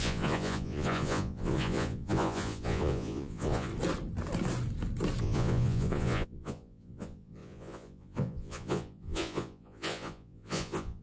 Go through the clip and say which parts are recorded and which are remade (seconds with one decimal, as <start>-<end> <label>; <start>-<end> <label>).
0.0-3.7 remade; 3.7-5.2 recorded; 5.2-11.0 remade